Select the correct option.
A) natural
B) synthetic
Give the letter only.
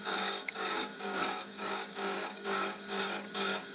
B